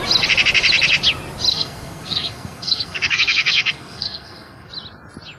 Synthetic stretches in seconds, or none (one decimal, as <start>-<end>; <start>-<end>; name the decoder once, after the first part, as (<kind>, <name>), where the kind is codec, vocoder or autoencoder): 1.5-4.7 (codec, SNAC)